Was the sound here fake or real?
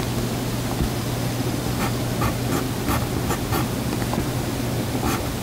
real